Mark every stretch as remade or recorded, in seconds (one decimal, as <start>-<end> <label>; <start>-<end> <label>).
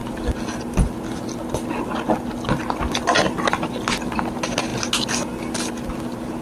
0.0-6.4 recorded